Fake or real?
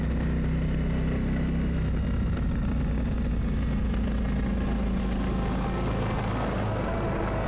real